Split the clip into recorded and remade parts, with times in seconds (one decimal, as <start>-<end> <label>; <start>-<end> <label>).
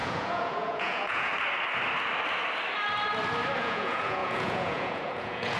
0.0-1.3 remade; 1.3-3.6 recorded; 3.6-5.6 remade